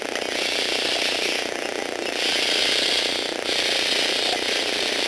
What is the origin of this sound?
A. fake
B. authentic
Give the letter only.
B